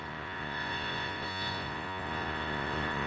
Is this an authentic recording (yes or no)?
no